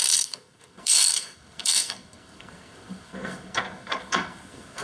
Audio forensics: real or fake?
fake